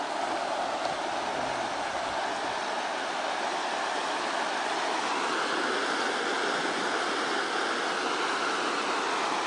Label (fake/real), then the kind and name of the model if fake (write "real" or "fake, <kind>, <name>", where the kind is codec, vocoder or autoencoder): real